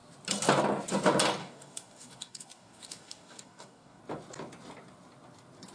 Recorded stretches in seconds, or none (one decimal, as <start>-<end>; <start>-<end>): 0.0-1.4; 4.0-5.7